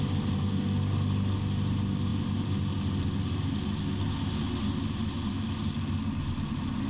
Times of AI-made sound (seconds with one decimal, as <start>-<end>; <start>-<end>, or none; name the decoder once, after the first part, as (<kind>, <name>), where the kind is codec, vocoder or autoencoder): none